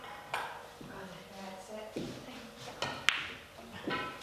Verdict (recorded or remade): recorded